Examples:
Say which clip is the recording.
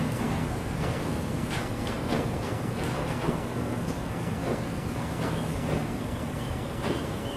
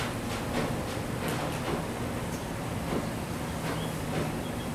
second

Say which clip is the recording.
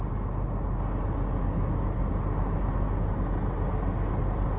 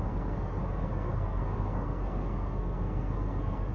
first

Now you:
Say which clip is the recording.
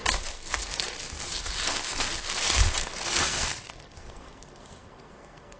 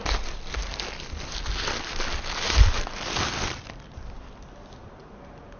second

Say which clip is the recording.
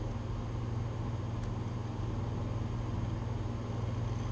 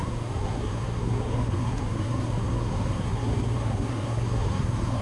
first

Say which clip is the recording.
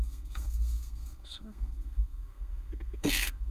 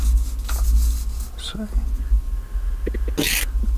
second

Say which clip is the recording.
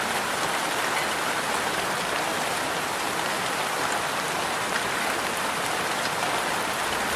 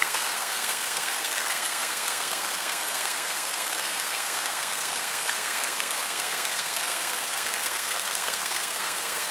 first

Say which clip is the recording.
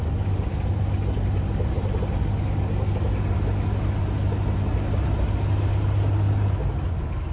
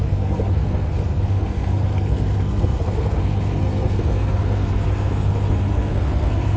first